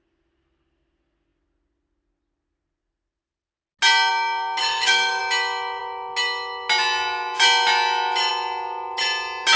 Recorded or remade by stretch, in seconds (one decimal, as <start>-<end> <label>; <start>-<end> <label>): 0.0-4.6 recorded; 4.6-5.2 remade; 5.2-9.6 recorded